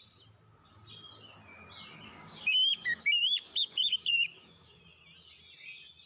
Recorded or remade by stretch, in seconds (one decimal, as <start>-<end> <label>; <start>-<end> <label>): 0.0-2.1 recorded; 2.1-4.8 remade; 4.8-6.1 recorded